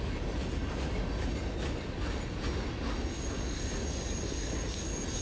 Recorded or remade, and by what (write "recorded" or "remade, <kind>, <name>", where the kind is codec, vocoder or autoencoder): recorded